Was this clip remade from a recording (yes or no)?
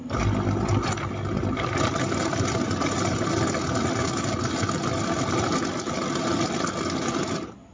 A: no